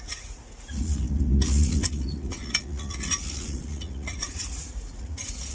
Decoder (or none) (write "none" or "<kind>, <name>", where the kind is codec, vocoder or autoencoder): vocoder, Vocos